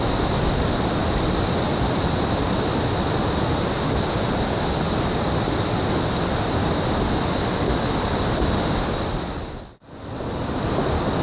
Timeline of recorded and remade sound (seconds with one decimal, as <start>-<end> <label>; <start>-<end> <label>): 0.0-11.2 recorded